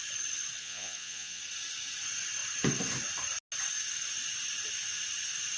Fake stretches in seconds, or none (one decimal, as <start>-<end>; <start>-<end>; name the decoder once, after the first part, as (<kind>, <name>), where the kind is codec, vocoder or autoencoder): 0.6-1.4 (vocoder, Vocos)